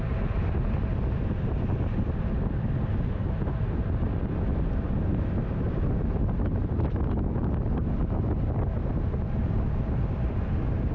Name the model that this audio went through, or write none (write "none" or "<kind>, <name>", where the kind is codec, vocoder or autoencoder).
none